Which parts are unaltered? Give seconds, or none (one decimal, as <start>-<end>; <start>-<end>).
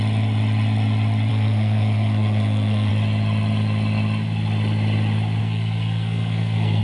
0.0-1.3; 2.9-5.4